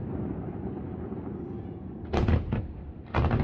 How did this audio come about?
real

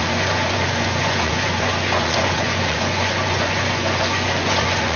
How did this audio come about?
fake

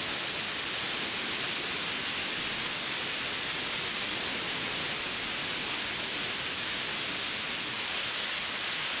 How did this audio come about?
real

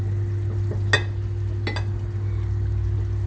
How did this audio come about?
real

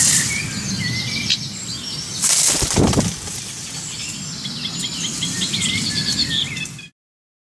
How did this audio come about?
real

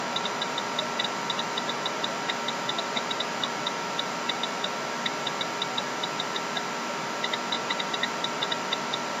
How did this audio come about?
real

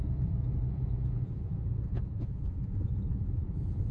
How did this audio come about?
fake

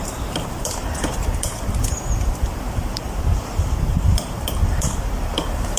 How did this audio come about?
fake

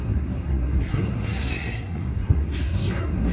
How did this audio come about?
fake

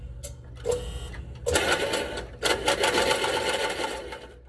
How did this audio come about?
real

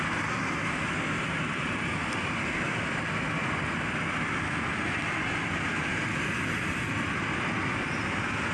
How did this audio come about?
real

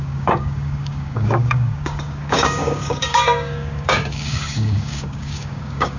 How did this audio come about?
fake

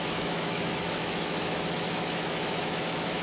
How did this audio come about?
fake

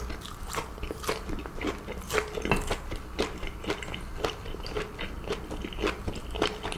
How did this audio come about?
real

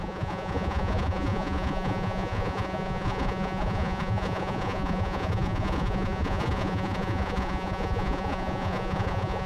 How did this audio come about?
fake